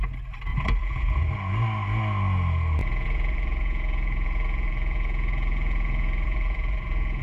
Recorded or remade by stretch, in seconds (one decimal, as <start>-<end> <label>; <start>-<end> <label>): 0.0-0.5 recorded; 0.5-1.3 remade; 1.3-2.8 recorded; 2.8-7.2 remade

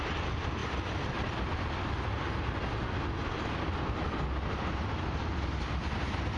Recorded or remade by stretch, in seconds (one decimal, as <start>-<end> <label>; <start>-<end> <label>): 0.0-6.4 recorded

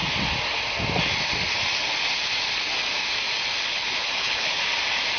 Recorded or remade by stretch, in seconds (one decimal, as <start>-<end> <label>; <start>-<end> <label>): 0.0-3.7 recorded; 3.7-4.6 remade; 4.6-5.2 recorded

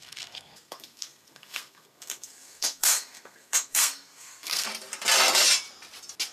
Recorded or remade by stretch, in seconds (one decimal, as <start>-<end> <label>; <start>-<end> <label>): 0.0-4.7 remade; 4.7-6.3 recorded

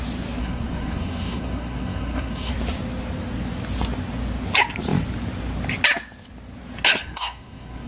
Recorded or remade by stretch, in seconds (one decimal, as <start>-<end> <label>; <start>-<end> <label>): 0.0-0.4 recorded; 0.4-2.5 remade; 2.5-7.0 recorded; 7.0-7.9 remade

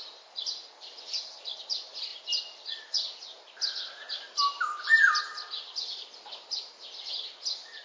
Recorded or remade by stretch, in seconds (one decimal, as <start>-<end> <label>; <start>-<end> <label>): 0.0-7.8 recorded